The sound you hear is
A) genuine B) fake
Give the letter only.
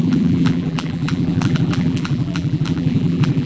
B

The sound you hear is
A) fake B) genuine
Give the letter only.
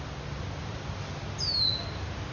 B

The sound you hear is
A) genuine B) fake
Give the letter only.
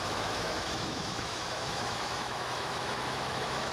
B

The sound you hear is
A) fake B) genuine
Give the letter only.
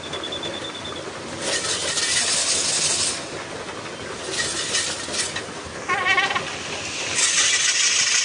B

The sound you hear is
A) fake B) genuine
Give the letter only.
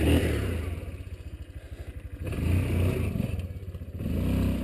B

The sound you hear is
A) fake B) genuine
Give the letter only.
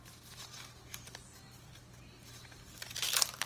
B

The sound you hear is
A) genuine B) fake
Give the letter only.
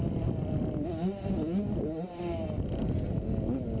A